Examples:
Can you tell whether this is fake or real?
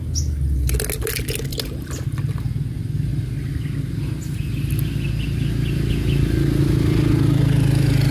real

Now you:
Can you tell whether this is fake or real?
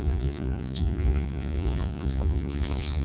fake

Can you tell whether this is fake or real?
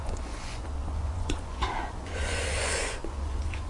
fake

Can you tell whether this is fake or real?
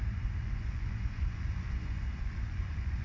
fake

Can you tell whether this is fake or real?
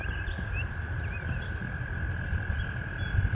real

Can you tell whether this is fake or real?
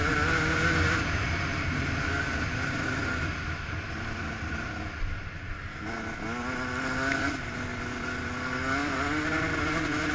real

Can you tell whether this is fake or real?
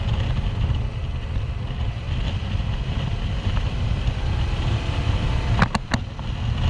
real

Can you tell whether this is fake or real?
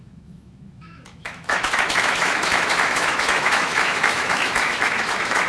fake